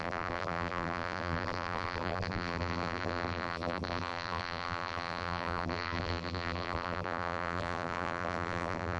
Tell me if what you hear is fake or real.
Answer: fake